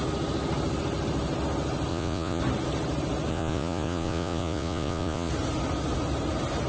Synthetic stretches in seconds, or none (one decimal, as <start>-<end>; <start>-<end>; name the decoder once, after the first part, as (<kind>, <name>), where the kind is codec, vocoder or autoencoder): 1.9-2.4 (vocoder, Vocos); 3.3-5.3

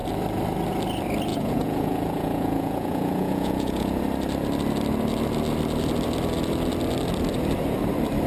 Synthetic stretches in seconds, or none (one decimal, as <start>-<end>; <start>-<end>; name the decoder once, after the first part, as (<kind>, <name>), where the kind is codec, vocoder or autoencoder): 1.3-4.0 (vocoder, Vocos)

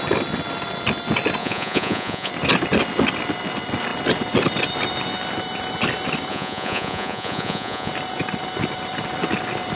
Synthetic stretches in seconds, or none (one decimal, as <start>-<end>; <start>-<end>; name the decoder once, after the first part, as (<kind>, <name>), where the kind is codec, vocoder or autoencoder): 1.4-2.3 (vocoder, Vocos); 6.3-7.9

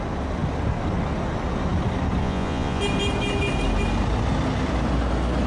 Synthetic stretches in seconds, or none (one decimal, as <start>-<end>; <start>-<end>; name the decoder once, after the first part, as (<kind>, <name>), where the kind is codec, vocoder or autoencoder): 2.2-2.8 (vocoder, Vocos)

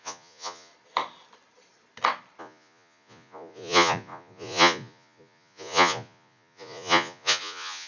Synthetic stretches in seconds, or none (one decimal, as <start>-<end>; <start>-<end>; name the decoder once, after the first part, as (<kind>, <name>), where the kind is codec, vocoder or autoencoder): 0.0-0.7 (vocoder, Vocos); 2.4-7.9

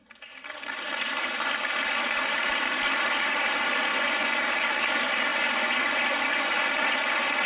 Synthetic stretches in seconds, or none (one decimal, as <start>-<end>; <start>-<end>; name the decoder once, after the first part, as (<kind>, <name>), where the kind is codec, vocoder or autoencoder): 3.9-4.4 (vocoder, Vocos); 5.3-6.7

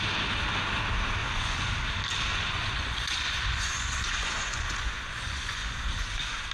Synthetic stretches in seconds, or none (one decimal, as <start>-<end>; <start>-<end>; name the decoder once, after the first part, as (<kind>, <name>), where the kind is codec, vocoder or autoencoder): 1.2-1.7 (vocoder, Vocos); 2.3-6.5

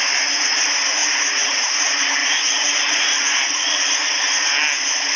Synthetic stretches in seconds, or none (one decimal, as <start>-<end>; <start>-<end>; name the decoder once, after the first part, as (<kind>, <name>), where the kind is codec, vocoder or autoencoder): 1.0-1.7 (vocoder, Vocos); 2.2-3.4